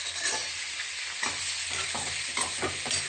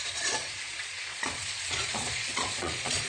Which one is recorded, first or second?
first